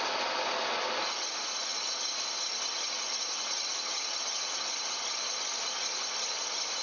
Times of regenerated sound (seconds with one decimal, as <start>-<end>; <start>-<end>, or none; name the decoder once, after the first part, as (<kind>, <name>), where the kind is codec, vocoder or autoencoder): none